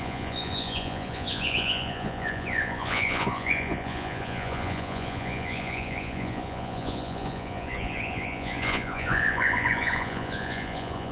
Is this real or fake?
fake